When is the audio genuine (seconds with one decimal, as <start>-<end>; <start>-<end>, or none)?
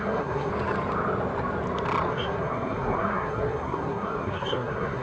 0.5-2.1